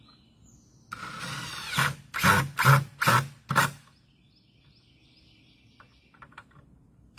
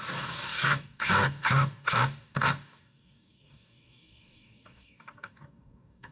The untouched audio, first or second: first